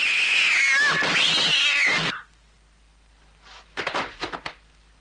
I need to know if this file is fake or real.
real